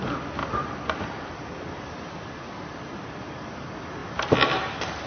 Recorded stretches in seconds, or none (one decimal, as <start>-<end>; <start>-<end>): 0.0-0.4; 3.5-5.1